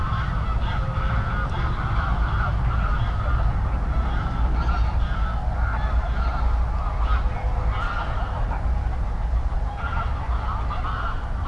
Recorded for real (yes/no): yes